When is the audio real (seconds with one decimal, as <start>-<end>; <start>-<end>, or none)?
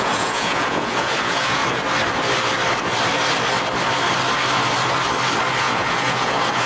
1.6-5.6